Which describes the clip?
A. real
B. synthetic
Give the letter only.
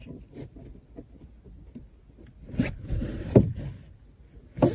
A